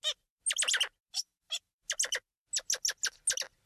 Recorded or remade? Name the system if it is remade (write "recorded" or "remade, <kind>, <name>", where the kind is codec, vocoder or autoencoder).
recorded